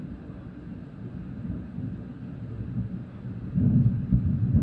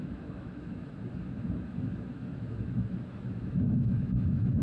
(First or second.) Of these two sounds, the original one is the first